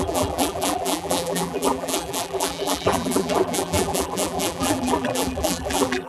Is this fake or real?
fake